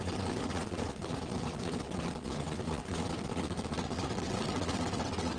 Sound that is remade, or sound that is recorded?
remade